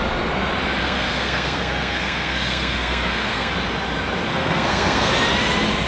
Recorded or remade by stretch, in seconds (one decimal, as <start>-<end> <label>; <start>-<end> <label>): 0.0-0.8 recorded; 0.8-3.5 remade; 3.5-4.3 recorded; 4.3-5.1 remade; 5.1-5.9 recorded